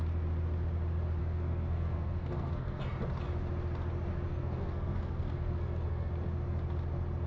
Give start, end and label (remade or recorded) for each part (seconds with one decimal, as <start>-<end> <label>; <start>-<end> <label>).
0.0-1.2 recorded; 1.2-2.8 remade; 2.8-4.3 recorded; 4.3-6.1 remade; 6.1-7.3 recorded